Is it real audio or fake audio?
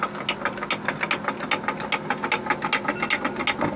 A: real